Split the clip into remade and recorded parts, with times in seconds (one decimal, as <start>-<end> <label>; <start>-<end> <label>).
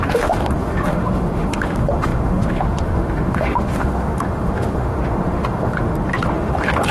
0.0-6.9 remade